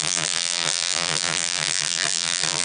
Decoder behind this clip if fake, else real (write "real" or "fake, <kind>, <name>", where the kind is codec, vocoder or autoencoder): fake, vocoder, BigVGAN v2